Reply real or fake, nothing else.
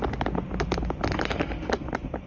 real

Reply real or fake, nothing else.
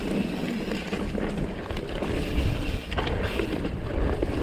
real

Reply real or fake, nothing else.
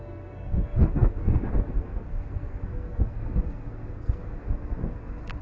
fake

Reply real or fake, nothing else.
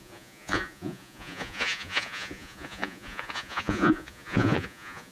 fake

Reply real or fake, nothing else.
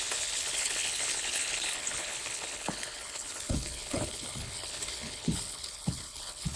fake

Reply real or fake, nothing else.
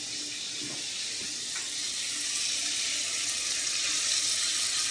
real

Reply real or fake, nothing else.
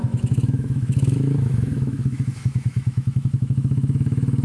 fake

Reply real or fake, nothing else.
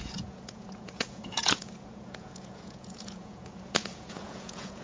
fake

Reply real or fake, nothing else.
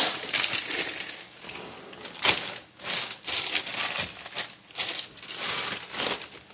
real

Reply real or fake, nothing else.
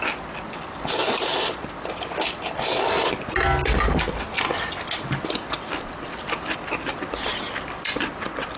real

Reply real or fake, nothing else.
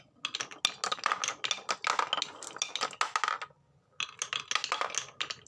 real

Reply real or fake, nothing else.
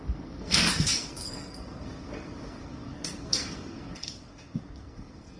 fake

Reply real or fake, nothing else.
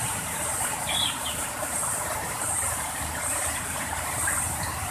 fake